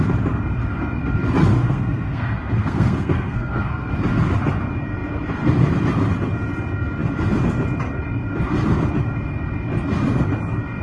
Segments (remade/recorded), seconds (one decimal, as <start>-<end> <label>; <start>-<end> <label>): 0.0-1.5 recorded; 1.5-3.9 remade; 3.9-10.8 recorded